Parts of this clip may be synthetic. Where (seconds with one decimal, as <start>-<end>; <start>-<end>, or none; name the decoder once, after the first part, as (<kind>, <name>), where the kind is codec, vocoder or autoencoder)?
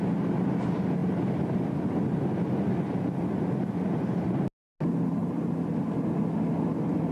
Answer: 5.2-5.7 (vocoder, BigVGAN v2)